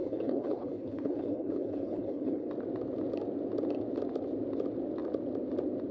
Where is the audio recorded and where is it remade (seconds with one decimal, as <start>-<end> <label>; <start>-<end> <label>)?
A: 0.0-2.5 remade; 2.5-5.9 recorded